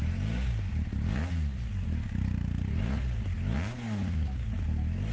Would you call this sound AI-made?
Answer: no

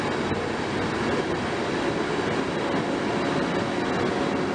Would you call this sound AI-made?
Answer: no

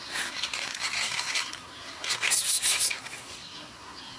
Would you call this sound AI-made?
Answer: yes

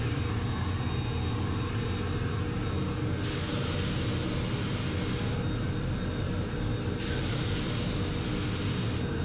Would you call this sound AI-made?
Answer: no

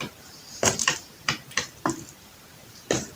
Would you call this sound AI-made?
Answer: yes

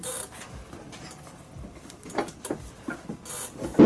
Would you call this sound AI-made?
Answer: no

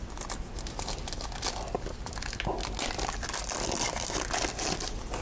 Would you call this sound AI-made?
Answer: no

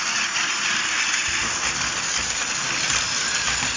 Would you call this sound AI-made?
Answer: no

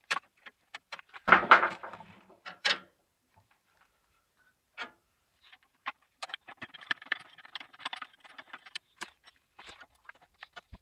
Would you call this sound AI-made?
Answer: yes